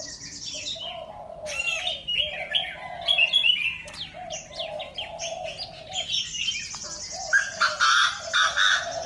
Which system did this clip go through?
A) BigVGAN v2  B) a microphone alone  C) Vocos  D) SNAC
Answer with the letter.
B